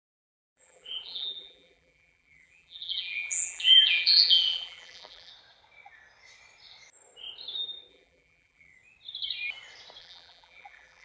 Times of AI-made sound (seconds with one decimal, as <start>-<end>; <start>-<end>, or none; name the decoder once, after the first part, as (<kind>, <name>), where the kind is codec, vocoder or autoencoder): 0.0-5.3 (vocoder, BigVGAN v2); 7.9-8.7; 10.0-11.0